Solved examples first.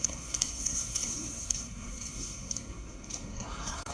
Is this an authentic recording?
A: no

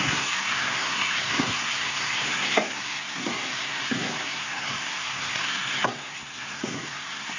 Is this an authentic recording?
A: no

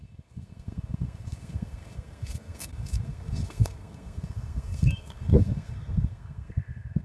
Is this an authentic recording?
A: no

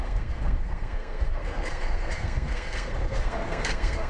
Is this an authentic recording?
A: no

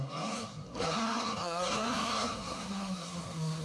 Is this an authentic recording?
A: no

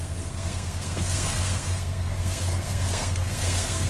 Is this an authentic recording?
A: no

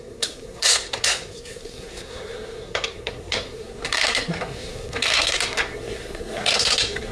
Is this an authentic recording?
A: no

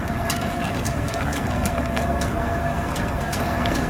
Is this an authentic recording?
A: no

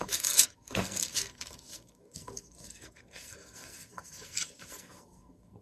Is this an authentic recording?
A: no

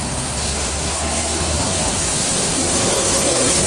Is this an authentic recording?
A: no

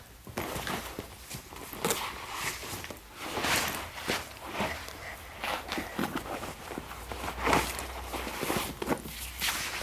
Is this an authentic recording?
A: yes